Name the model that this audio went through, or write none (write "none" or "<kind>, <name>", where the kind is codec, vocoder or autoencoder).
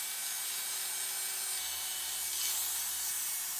none